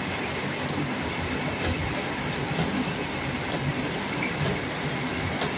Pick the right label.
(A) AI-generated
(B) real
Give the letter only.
B